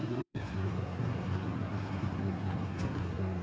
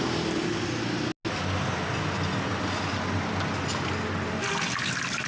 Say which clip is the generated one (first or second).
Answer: first